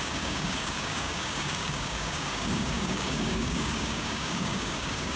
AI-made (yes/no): yes